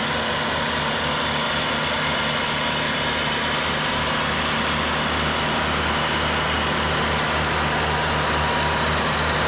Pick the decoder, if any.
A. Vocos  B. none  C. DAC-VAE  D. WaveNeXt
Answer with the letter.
B